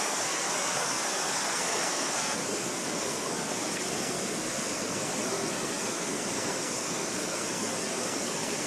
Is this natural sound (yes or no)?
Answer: no